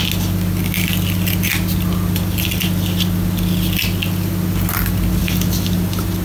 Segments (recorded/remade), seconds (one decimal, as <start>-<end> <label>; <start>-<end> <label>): 0.0-6.2 recorded